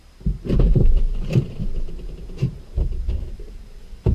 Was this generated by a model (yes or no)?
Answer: yes